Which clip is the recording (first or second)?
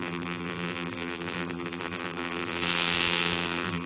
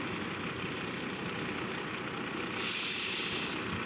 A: second